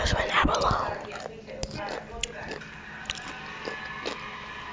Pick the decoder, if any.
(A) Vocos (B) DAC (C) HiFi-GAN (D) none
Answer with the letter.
D